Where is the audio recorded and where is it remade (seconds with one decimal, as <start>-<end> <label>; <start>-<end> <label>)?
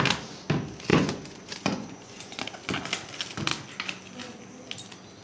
0.0-0.9 recorded; 0.9-2.4 remade; 2.4-5.2 recorded